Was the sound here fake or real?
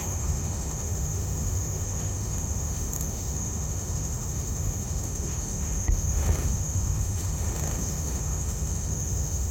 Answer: fake